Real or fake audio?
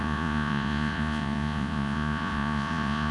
fake